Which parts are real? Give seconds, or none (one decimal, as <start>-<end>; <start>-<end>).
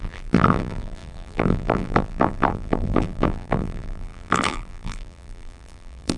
none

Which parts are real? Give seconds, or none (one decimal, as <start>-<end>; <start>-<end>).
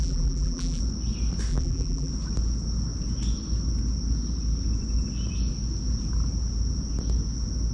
0.8-1.5; 2.1-7.7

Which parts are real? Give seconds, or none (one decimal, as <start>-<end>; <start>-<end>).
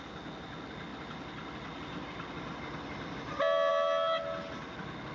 0.0-5.1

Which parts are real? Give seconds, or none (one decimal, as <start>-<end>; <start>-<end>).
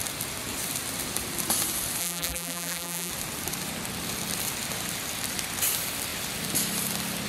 0.0-2.0; 3.1-7.3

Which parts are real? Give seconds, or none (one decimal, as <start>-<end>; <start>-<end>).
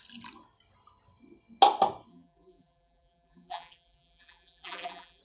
0.0-2.1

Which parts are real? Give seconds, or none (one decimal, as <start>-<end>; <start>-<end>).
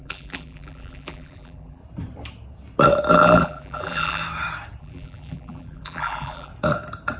1.8-3.1; 4.2-4.8; 6.5-7.2